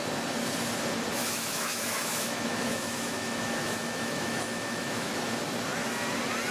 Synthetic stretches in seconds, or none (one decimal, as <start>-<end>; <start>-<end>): 1.2-5.1